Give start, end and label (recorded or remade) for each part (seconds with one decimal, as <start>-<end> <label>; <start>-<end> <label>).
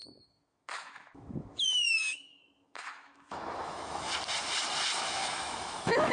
0.0-4.1 remade; 4.1-4.9 recorded; 4.9-6.1 remade